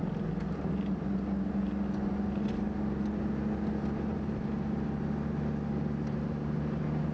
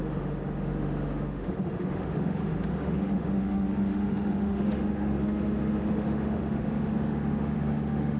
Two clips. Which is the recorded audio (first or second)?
first